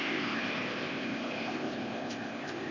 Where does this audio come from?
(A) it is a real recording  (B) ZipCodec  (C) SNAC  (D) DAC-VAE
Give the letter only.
B